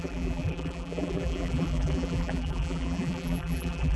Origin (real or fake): fake